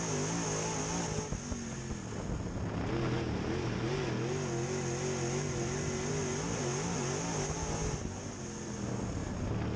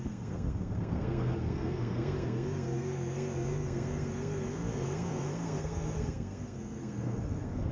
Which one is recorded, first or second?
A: first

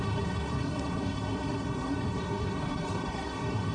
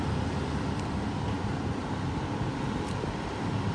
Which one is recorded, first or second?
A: second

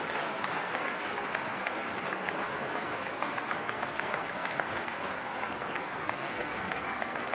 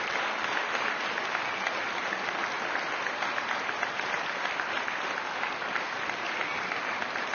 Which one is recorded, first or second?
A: second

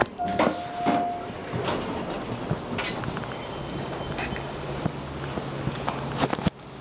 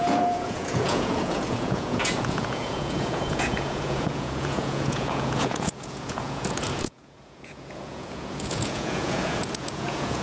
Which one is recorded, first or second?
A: first